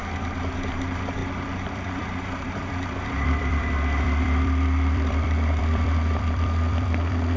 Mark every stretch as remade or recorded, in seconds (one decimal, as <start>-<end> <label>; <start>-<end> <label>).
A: 0.0-0.7 recorded; 0.7-7.4 remade